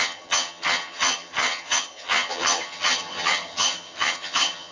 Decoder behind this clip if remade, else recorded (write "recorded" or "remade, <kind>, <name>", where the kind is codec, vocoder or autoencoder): remade, vocoder, HiFi-GAN